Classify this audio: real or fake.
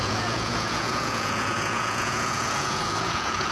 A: fake